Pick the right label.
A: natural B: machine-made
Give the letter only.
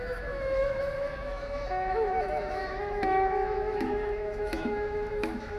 B